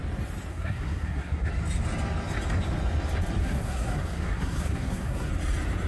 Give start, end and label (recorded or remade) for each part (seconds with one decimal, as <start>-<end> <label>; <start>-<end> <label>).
0.0-0.5 recorded; 0.5-1.5 remade; 1.5-3.4 recorded; 3.4-5.3 remade; 5.3-5.9 recorded